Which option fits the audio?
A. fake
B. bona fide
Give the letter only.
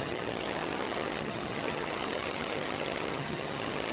A